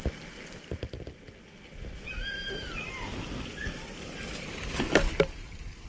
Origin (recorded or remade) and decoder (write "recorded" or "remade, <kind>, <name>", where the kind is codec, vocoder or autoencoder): recorded